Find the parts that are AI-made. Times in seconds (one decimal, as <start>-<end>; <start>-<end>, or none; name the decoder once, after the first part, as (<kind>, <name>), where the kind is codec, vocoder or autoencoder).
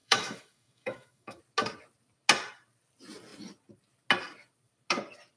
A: 0.0-1.4 (autoencoder, DAC-VAE)